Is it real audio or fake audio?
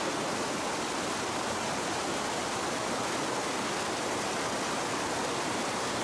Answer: real